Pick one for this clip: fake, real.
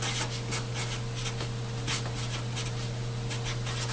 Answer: real